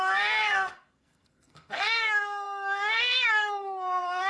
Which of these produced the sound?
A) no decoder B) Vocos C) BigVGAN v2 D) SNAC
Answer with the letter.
D